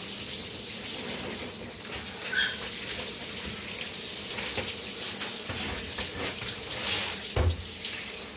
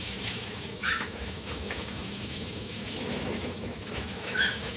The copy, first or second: second